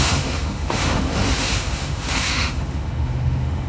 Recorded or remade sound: remade